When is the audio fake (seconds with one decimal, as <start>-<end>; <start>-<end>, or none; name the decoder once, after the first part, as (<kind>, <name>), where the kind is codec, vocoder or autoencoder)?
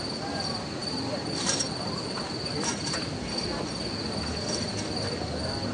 none